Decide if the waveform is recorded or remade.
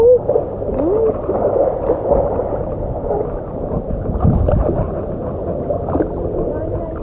recorded